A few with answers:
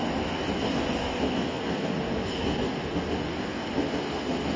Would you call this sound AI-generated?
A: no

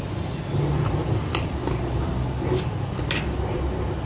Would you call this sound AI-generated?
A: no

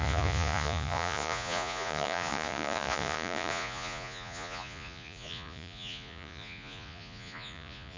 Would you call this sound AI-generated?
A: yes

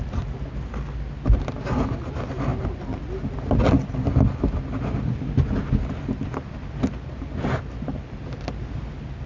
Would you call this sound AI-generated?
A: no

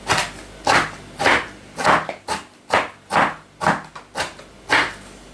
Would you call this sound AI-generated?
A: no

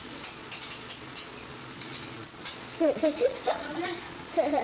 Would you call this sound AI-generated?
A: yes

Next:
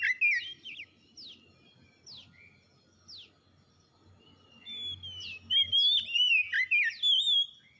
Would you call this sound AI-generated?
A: no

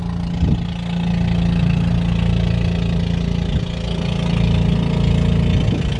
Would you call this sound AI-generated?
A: no